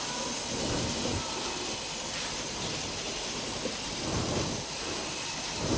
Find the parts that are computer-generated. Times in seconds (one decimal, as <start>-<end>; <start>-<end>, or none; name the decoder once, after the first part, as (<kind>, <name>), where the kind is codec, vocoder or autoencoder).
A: 1.1-4.4 (vocoder, BigVGAN v2)